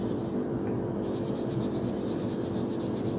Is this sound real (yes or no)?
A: no